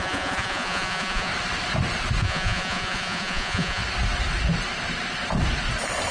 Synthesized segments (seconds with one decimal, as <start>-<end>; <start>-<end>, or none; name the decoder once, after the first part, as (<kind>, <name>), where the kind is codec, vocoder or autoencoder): 0.0-1.3 (vocoder, Vocos); 2.2-3.8